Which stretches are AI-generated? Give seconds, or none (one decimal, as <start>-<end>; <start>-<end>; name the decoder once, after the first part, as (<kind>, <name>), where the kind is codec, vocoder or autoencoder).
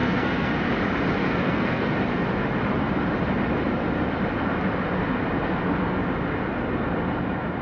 0.0-0.6 (codec, SNAC); 1.2-1.9